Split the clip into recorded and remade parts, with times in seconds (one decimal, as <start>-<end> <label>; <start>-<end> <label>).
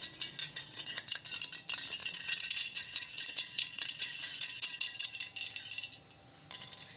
0.0-0.4 recorded; 0.4-1.2 remade; 1.2-2.0 recorded; 2.0-5.1 remade; 5.1-7.0 recorded